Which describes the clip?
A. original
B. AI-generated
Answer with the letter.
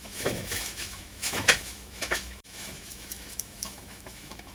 B